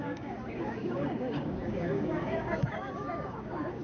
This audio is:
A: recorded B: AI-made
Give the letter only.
B